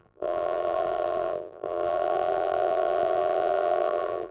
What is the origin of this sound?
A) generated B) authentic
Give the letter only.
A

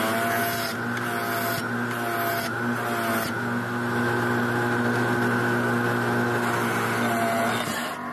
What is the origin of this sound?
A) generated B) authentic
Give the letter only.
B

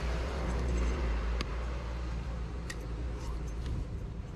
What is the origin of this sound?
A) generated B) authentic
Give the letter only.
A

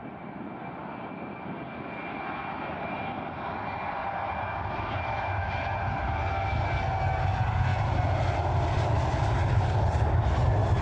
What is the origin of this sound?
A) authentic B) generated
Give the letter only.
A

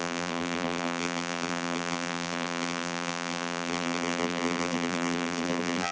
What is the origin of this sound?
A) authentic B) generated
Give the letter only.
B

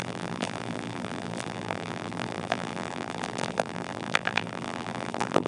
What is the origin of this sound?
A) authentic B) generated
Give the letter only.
B